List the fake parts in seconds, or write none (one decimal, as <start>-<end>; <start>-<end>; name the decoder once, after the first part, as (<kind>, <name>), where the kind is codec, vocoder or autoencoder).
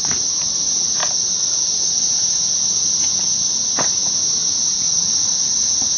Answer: 0.0-1.0 (vocoder, Vocos); 1.7-6.0